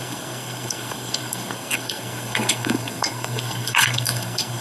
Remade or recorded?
remade